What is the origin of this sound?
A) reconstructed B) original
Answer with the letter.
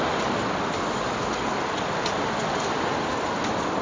B